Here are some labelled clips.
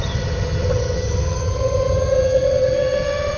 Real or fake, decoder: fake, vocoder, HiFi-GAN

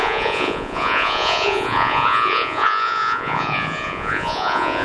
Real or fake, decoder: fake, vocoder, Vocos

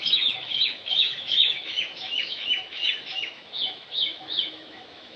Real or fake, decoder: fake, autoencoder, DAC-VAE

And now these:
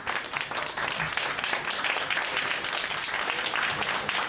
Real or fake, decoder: real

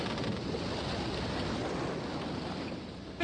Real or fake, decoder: real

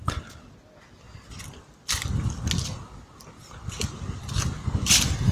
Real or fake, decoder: real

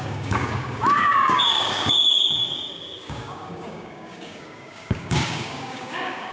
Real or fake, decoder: fake, codec, DAC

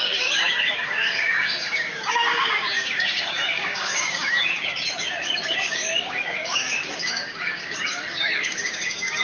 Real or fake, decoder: fake, codec, DAC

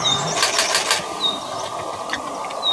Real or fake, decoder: real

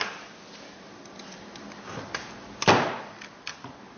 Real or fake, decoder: real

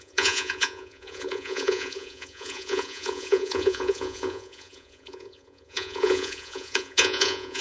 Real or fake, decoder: fake, vocoder, Vocos